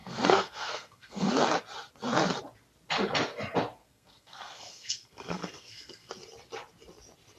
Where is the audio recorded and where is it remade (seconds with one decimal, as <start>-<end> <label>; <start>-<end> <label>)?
0.0-1.3 remade; 1.3-3.8 recorded; 3.8-6.1 remade; 6.1-7.4 recorded